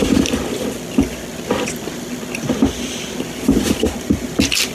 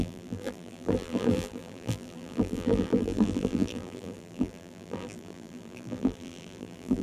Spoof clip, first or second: second